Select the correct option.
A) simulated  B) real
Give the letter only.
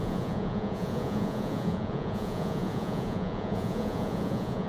A